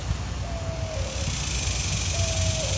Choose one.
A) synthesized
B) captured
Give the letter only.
B